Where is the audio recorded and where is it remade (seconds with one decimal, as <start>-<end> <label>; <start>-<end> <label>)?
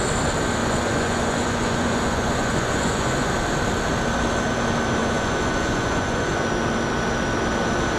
0.0-0.6 recorded; 0.6-3.3 remade; 3.3-5.0 recorded; 5.0-6.4 remade; 6.4-8.0 recorded